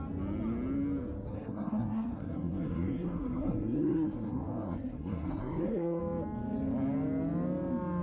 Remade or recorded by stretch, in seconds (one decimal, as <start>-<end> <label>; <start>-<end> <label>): 0.0-1.3 recorded; 1.3-6.0 remade; 6.0-8.0 recorded